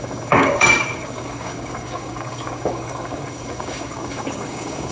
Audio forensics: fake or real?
fake